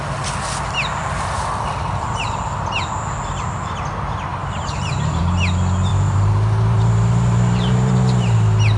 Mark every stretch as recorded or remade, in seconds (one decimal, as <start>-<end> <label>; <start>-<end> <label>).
0.0-4.3 recorded; 4.3-5.2 remade; 5.2-5.9 recorded; 5.9-7.9 remade; 7.9-8.8 recorded